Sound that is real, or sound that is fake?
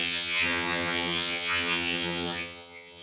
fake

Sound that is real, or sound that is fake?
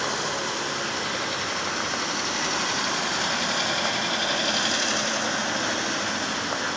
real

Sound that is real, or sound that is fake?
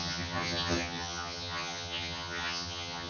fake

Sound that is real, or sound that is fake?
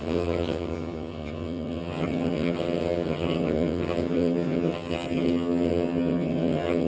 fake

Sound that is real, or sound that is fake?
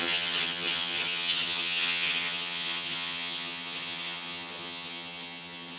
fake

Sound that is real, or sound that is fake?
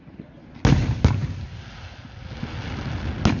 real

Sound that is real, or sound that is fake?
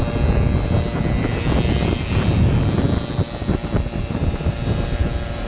real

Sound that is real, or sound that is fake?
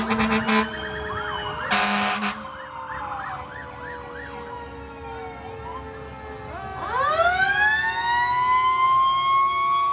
real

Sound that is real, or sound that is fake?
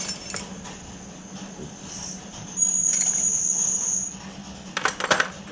real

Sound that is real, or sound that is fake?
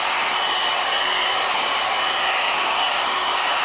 real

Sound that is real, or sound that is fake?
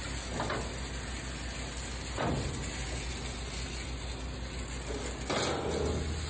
real